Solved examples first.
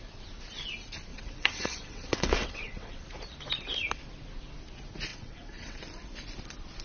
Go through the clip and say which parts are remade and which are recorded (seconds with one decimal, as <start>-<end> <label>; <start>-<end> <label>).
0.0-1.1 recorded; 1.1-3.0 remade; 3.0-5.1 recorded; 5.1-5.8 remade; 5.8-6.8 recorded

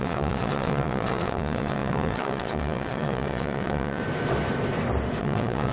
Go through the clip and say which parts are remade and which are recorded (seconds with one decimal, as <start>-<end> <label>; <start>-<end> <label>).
0.0-4.0 remade; 4.0-5.2 recorded; 5.2-5.7 remade

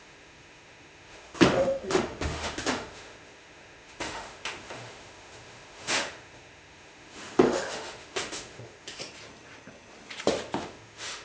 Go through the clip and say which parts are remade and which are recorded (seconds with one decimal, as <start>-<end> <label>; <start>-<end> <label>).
0.0-9.0 remade; 9.0-10.6 recorded; 10.6-11.2 remade